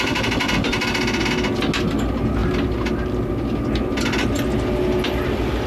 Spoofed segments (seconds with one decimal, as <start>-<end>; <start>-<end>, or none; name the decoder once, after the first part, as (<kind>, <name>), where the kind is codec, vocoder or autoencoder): none